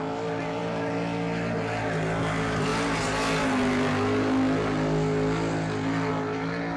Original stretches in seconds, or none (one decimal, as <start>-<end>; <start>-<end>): 0.0-6.8